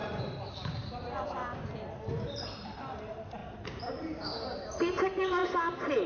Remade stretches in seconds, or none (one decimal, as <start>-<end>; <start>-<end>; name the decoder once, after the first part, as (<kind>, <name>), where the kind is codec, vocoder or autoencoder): 0.0-1.4 (vocoder, BigVGAN v2); 2.4-3.4; 3.9-5.4